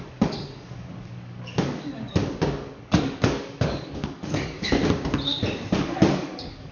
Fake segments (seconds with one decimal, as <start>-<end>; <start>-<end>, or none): 0.0-4.8; 5.8-6.7